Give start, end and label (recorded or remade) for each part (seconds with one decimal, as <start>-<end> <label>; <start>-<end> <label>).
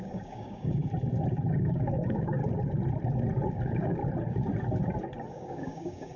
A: 0.0-0.8 remade; 0.8-1.5 recorded; 1.5-2.4 remade; 2.4-3.5 recorded; 3.5-4.0 remade; 4.0-5.3 recorded; 5.3-6.2 remade